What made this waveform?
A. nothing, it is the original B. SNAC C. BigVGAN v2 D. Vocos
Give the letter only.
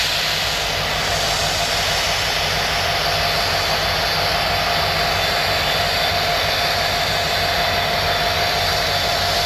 A